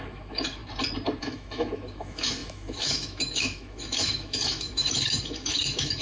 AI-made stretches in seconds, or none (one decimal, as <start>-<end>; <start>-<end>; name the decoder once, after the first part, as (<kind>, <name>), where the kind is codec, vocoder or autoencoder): 0.0-0.6 (autoencoder, DAC-VAE); 1.2-6.0